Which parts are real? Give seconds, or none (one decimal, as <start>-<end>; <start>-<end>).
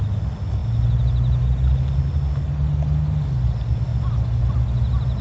0.0-5.2